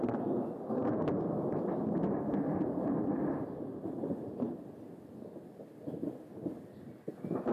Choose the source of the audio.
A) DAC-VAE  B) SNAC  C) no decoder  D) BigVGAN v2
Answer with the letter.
C